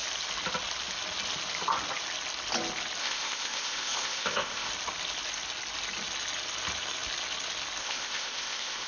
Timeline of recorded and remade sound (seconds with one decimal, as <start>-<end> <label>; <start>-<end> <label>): 0.0-3.0 recorded; 3.0-4.7 remade; 4.7-7.8 recorded; 7.8-8.9 remade